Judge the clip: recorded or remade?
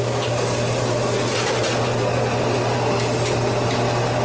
recorded